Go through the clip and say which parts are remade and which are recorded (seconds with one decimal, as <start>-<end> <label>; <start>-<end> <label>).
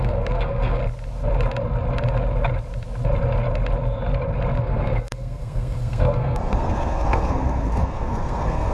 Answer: 0.0-0.8 remade; 0.8-4.6 recorded; 4.6-8.7 remade